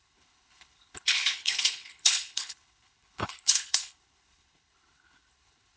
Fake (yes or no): yes